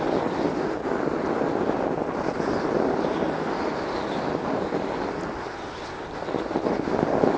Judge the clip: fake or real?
real